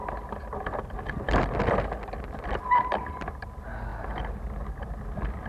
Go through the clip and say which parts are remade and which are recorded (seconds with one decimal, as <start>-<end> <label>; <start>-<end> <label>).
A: 0.0-5.5 recorded